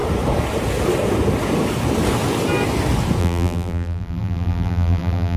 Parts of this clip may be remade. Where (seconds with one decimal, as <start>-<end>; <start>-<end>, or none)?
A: 3.2-5.4